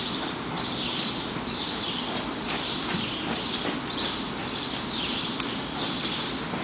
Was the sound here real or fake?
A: fake